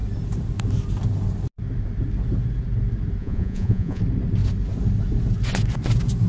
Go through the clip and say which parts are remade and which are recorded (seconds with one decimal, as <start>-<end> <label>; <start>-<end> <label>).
0.0-3.2 recorded; 3.2-4.0 remade; 4.0-6.3 recorded